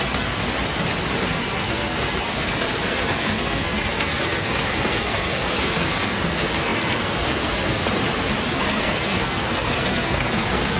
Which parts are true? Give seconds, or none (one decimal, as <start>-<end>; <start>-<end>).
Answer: 0.4-1.3; 7.8-8.5